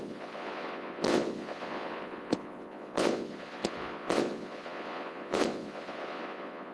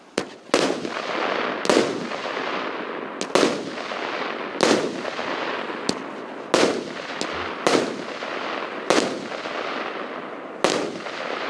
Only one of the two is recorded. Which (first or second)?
second